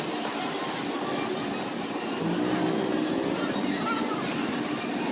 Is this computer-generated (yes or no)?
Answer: no